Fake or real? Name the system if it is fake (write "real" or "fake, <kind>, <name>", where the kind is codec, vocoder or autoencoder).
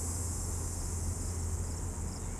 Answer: real